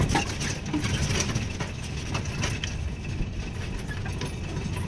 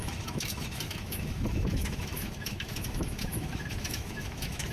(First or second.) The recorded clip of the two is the first